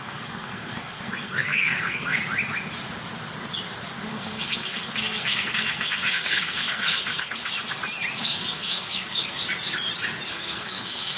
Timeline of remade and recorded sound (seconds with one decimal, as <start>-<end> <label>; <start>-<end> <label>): 0.0-2.2 remade; 2.2-4.1 recorded; 4.1-7.4 remade; 7.4-8.2 recorded; 8.2-9.4 remade; 9.4-10.3 recorded; 10.3-11.2 remade